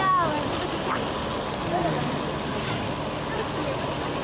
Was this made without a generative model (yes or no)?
yes